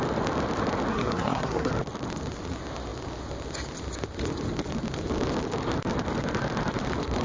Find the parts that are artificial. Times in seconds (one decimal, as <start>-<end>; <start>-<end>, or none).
0.9-1.7